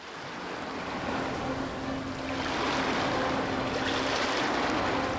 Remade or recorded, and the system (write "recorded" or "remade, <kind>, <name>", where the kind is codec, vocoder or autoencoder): recorded